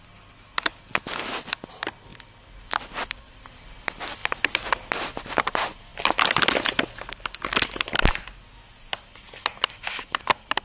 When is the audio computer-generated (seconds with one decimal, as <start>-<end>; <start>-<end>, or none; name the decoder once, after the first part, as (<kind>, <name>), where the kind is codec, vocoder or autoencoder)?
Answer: none

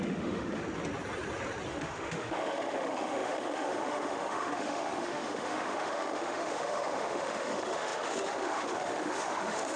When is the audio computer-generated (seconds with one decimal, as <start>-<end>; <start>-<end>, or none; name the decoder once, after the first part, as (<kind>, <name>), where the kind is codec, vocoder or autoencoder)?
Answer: 0.0-0.6 (autoencoder, DAC-VAE); 1.7-9.8

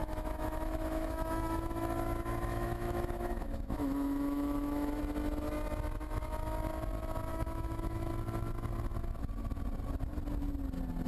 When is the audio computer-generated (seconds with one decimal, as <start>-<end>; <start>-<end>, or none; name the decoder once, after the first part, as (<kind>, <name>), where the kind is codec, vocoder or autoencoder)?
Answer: 0.0-5.0 (autoencoder, DAC-VAE); 7.3-8.1

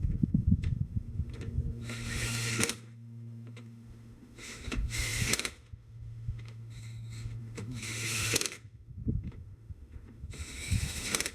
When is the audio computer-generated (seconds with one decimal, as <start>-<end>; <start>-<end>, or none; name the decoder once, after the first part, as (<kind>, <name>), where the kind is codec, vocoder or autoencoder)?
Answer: 0.0-11.3 (autoencoder, DAC-VAE)

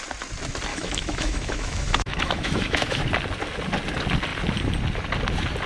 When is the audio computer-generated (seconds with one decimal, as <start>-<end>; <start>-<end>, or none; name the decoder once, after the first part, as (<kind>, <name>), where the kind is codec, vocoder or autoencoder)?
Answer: 0.7-3.0 (autoencoder, DAC-VAE)

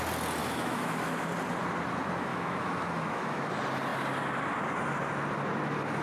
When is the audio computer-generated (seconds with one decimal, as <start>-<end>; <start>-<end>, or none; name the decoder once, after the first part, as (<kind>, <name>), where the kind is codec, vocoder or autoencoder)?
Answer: 0.4-1.3 (autoencoder, DAC-VAE); 2.3-3.5

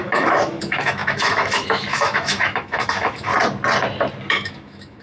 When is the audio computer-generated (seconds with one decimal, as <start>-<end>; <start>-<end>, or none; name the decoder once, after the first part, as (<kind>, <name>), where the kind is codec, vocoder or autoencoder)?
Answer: 0.0-3.3 (autoencoder, DAC-VAE); 4.3-5.0

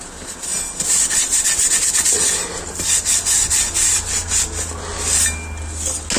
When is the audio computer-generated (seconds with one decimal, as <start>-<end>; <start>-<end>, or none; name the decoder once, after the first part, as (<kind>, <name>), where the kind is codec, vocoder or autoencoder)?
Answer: none